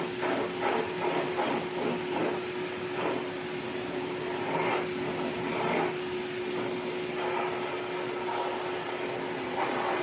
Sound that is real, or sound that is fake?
real